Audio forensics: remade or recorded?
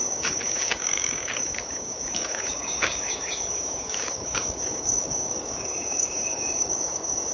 remade